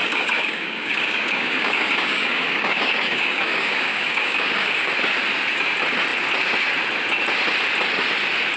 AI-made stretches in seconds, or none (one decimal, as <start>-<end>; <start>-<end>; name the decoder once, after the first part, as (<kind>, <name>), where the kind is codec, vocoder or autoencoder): 0.0-4.9 (codec, DAC)